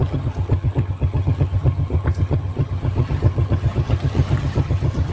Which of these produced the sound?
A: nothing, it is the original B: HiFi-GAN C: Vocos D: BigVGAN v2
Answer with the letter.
B